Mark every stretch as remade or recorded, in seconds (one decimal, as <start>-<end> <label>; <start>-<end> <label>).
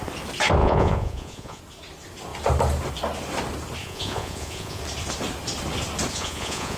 0.0-0.6 recorded; 0.6-1.6 remade; 1.6-3.8 recorded; 3.8-4.8 remade; 4.8-6.1 recorded; 6.1-6.8 remade